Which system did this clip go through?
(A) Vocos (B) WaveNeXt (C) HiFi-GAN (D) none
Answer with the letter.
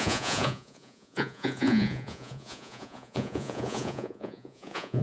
A